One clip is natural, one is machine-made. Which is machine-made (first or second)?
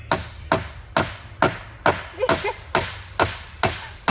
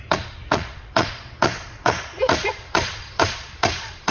second